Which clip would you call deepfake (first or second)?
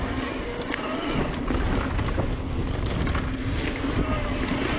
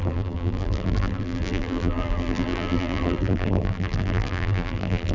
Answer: second